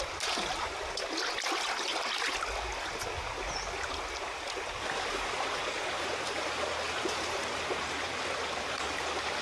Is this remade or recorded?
recorded